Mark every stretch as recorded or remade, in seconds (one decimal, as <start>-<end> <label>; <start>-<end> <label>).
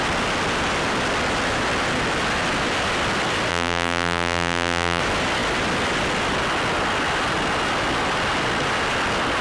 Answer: 0.0-3.5 recorded; 3.5-5.0 remade; 5.0-9.4 recorded